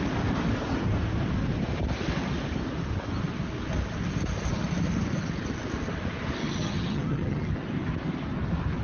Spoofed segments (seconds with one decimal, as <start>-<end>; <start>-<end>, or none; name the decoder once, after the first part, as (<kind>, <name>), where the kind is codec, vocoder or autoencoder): 6.4-7.5 (vocoder, HiFi-GAN)